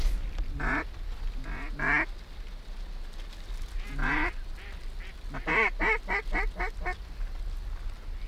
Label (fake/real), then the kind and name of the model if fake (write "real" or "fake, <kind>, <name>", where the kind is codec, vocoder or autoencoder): real